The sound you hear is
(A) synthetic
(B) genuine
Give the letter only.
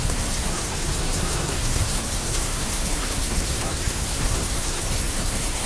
A